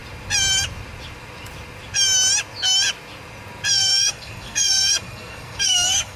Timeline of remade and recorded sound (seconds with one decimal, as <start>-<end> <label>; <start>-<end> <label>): 0.0-3.7 recorded; 3.7-6.2 remade